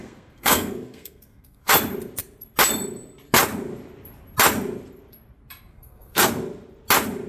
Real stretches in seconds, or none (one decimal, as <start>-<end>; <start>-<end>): 1.7-5.7; 6.3-7.3